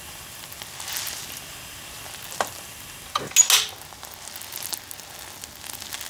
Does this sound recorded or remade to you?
recorded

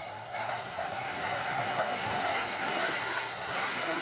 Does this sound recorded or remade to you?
remade